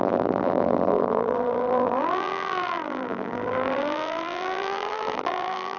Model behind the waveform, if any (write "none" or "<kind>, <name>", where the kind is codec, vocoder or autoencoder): vocoder, BigVGAN v2